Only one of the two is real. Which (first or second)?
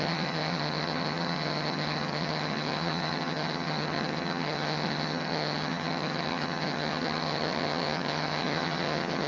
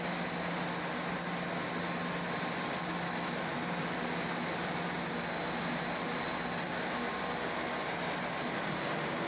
second